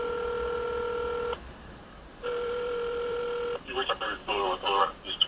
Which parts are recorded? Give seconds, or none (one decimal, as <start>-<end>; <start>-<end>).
0.0-1.8; 3.2-4.2; 4.8-5.3